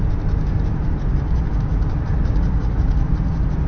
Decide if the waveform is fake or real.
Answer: real